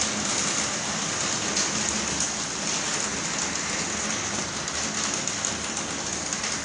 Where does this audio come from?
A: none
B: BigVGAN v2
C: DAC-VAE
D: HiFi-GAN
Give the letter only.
A